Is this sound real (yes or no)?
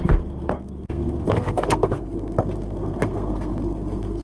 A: no